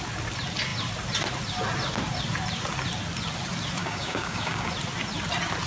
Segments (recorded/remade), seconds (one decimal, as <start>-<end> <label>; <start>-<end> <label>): 0.0-3.8 recorded; 3.8-4.7 remade; 4.7-5.7 recorded